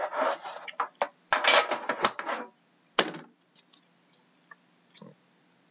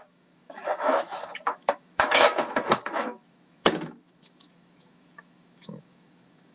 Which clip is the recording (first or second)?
first